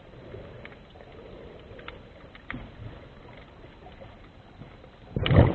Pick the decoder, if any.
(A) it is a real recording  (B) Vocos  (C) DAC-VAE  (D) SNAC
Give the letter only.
A